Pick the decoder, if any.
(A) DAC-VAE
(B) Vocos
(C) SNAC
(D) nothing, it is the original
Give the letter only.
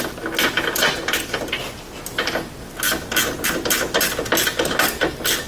D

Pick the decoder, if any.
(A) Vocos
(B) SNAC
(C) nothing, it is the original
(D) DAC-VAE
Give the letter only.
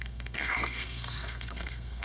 B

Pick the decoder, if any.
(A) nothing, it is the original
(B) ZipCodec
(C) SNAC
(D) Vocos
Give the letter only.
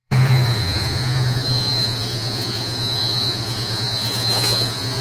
D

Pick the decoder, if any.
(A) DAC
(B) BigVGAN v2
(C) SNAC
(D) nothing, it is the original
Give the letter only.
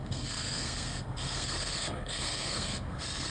C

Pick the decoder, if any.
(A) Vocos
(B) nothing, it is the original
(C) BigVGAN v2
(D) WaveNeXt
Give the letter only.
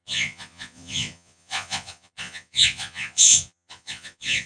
A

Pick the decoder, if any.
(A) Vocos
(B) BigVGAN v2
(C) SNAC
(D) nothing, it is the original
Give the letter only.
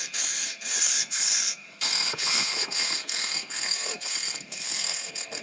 C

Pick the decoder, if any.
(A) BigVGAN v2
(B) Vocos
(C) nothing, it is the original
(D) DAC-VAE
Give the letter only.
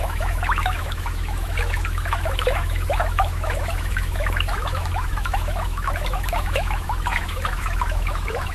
D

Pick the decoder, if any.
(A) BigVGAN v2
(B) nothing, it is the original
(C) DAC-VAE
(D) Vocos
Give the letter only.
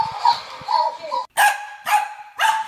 A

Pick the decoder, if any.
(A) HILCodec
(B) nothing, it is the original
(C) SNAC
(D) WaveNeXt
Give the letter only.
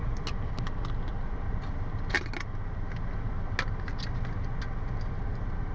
B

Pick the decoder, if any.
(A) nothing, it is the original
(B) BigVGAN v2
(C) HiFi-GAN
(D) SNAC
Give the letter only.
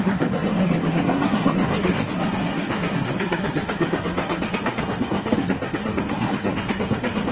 D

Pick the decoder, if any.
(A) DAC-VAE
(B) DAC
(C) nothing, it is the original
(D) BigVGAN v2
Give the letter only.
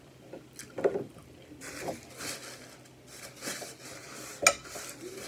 C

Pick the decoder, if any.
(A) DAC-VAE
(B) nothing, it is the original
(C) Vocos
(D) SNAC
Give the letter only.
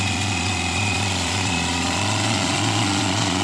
C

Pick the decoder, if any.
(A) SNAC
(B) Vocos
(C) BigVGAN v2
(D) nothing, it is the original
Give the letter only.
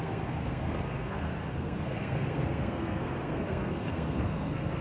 A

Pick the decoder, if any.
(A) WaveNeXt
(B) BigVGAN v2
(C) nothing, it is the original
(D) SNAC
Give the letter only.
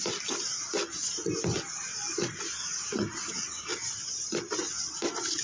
C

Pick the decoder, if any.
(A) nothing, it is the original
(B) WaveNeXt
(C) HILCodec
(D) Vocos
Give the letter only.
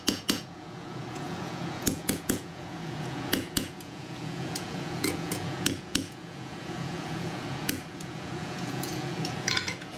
D